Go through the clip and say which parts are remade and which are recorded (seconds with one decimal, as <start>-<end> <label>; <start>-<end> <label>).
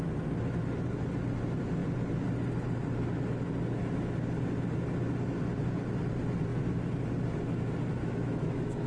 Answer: 0.0-8.0 recorded; 8.0-8.9 remade